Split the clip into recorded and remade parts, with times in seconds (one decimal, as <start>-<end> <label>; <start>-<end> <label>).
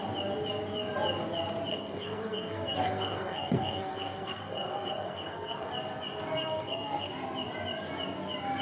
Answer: 0.0-1.7 recorded; 1.7-5.7 remade; 5.7-6.3 recorded; 6.3-7.1 remade; 7.1-8.6 recorded